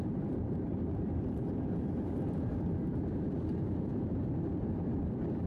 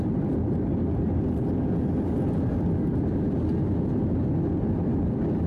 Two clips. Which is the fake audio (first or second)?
first